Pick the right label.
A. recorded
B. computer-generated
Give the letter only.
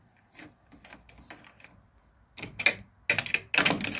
A